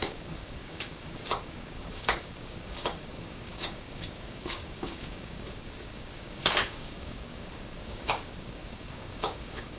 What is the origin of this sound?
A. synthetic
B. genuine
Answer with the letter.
A